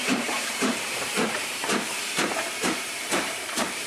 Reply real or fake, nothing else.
fake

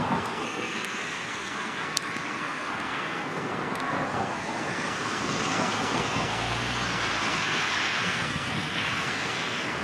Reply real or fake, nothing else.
fake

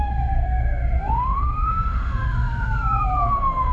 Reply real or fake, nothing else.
fake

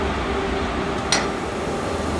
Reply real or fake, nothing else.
real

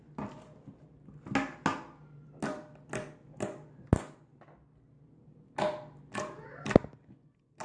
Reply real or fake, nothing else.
real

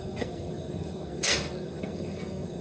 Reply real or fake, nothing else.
fake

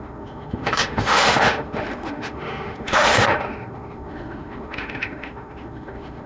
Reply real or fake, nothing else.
fake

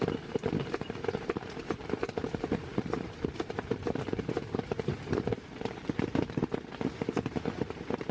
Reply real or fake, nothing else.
fake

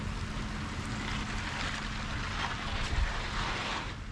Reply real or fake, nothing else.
real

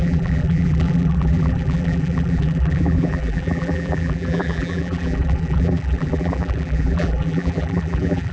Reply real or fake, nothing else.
fake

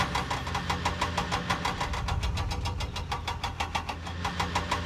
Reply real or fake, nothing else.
real